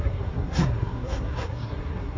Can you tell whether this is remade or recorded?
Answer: remade